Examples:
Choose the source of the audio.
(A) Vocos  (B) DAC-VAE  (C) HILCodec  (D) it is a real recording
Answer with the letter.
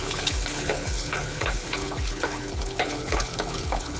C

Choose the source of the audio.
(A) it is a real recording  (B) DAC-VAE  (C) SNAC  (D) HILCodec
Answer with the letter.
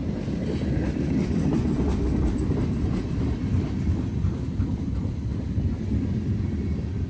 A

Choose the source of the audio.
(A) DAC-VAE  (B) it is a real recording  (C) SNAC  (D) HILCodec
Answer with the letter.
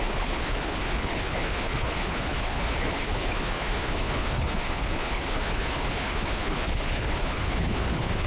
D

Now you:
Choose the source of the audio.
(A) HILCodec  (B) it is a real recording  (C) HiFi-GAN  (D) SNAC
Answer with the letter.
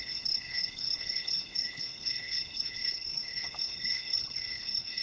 A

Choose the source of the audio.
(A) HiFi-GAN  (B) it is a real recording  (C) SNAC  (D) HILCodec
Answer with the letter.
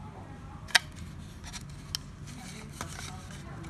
B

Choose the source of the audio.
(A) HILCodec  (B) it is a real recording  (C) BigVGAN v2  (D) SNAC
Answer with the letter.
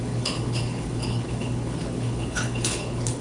A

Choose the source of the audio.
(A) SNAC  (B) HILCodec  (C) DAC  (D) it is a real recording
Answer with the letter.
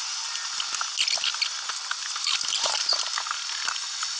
D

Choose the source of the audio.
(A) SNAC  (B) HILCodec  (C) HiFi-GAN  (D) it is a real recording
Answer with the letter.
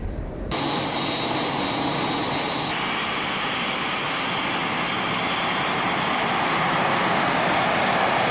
D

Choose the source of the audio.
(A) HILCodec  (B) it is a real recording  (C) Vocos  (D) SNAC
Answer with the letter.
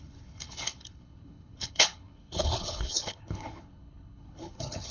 A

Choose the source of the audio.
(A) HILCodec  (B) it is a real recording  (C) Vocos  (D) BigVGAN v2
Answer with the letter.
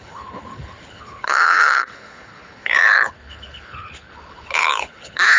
A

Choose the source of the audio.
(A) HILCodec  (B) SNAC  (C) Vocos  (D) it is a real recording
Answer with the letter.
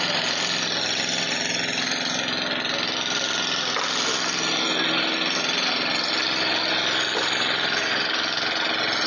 D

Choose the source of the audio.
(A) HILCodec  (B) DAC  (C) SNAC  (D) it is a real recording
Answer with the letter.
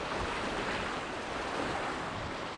D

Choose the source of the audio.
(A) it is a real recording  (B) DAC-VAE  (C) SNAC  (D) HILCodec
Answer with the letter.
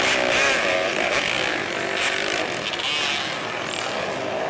A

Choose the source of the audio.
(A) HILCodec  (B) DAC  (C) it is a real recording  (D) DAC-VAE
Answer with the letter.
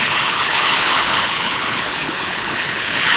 A